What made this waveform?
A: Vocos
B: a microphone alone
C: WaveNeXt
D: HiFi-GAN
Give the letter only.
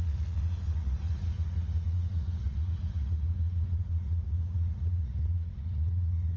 A